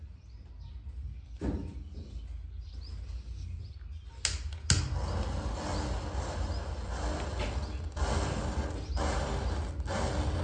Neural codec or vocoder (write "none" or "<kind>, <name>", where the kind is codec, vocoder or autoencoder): none